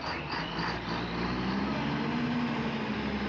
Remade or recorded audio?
recorded